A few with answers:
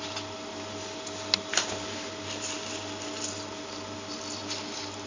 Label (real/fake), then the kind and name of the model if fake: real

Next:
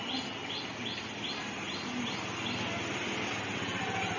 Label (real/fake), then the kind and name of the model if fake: real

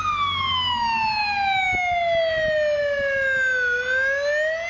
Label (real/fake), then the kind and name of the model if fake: real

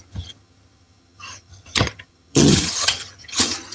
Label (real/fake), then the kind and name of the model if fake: fake, vocoder, HiFi-GAN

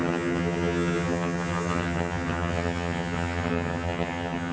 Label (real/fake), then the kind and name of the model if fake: fake, vocoder, HiFi-GAN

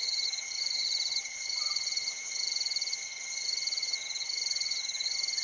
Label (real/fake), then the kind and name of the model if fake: fake, vocoder, HiFi-GAN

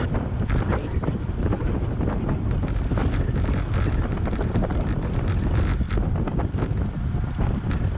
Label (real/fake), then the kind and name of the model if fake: real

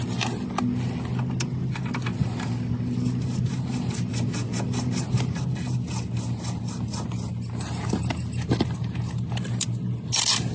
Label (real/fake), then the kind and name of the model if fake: real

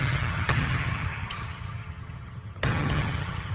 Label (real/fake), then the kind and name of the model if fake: fake, vocoder, HiFi-GAN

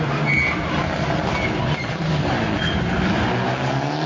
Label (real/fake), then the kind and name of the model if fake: real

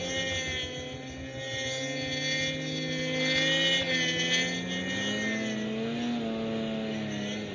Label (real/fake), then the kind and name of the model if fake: real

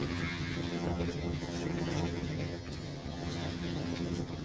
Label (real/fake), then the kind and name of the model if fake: fake, vocoder, HiFi-GAN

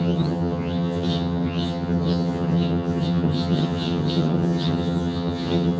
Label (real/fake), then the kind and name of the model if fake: fake, vocoder, HiFi-GAN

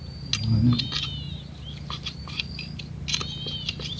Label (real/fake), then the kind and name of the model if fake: real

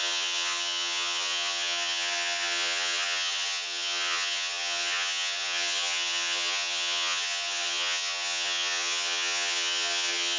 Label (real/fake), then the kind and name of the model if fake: fake, vocoder, HiFi-GAN